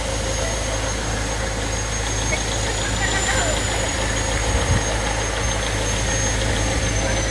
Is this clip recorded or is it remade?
recorded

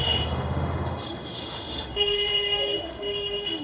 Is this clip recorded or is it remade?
remade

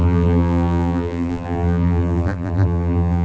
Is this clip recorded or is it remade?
remade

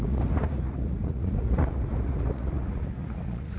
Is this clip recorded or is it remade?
remade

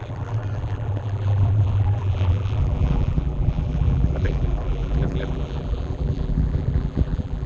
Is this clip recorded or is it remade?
remade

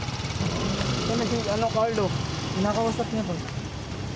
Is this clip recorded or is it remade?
recorded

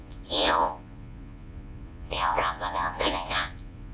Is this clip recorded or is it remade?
remade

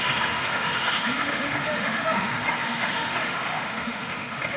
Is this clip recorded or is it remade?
remade